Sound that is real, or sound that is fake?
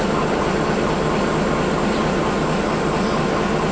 real